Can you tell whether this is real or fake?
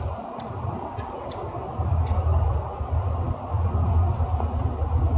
real